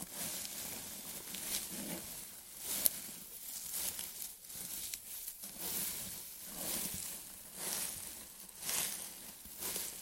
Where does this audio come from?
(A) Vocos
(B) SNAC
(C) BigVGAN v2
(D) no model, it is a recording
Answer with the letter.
D